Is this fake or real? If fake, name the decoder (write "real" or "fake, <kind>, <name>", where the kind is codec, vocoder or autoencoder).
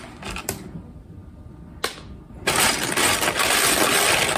real